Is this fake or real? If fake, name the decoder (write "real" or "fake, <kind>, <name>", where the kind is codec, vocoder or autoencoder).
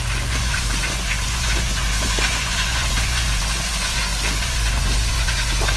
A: fake, vocoder, Vocos